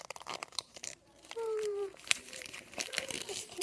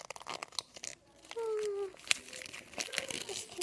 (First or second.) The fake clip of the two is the first